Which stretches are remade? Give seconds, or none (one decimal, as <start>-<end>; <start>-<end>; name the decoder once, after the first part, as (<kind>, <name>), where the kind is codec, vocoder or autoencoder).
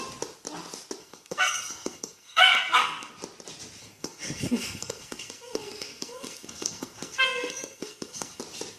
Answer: 1.0-3.1 (codec, SNAC); 3.8-8.4